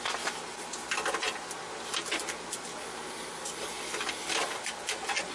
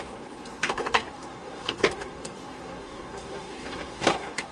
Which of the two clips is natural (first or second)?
first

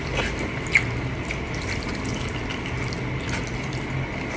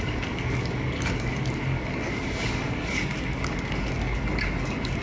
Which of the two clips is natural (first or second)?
first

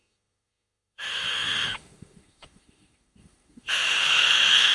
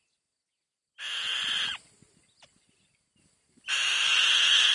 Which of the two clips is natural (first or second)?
second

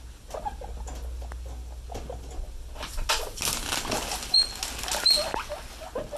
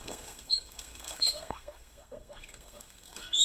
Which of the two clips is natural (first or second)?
first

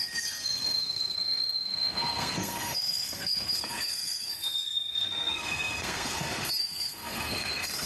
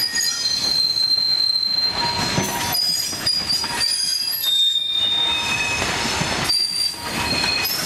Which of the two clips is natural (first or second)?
second